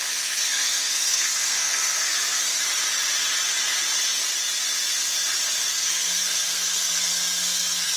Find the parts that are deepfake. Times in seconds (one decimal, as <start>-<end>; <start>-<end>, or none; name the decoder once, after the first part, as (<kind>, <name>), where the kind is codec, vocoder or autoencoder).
0.0-2.5 (codec, SNAC); 5.7-8.0